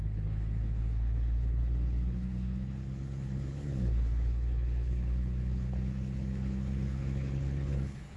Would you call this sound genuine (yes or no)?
no